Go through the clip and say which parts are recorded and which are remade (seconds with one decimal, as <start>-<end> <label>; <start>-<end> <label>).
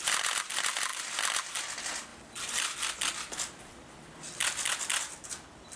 0.0-5.8 recorded